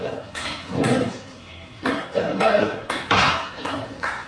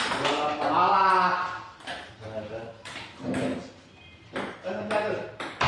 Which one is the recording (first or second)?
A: second